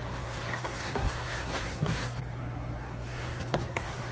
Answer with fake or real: fake